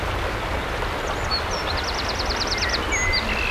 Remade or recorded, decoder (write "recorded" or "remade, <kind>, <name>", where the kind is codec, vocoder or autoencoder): recorded